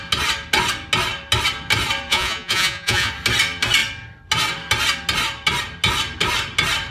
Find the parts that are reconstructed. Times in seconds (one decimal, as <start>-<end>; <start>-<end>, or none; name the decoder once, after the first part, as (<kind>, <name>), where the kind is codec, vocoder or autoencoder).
2.1-3.1 (vocoder, Vocos)